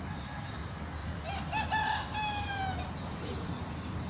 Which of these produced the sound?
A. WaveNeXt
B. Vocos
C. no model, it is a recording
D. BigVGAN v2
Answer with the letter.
C